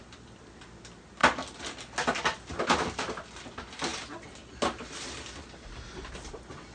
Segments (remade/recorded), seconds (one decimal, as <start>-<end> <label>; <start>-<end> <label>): 0.0-6.7 recorded